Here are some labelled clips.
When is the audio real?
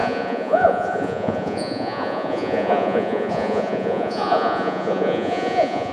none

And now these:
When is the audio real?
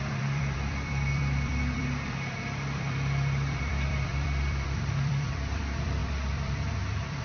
none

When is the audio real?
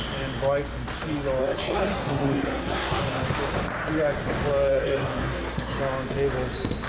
0.0-1.4; 3.0-4.7; 5.8-6.9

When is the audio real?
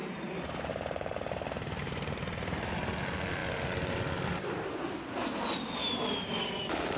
0.0-7.0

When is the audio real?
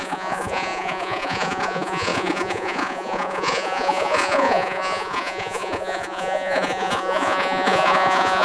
none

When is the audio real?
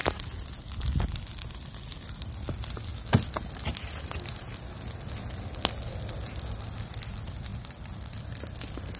0.0-9.0